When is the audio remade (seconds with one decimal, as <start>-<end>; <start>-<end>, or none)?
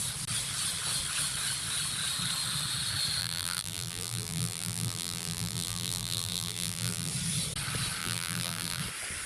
3.2-7.1; 8.0-8.8